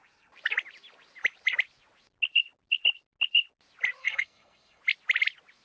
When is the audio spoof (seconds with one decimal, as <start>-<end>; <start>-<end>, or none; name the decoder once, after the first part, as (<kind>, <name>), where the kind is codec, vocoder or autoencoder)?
4.0-4.8 (codec, SNAC)